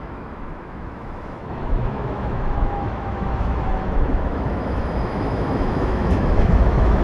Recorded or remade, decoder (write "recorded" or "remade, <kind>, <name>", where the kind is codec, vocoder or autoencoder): remade, autoencoder, DAC-VAE